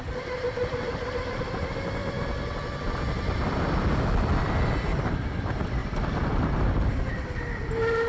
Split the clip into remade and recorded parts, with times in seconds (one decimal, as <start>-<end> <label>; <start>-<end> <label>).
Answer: 0.0-5.8 recorded; 5.8-7.0 remade; 7.0-8.1 recorded